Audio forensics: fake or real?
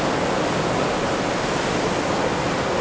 real